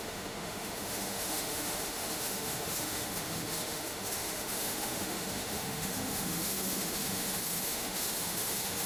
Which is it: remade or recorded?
remade